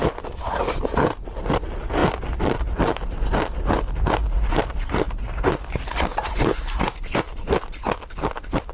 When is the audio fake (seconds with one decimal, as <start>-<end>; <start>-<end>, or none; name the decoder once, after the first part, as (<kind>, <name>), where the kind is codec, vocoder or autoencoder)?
none